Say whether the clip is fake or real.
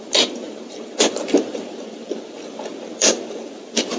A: fake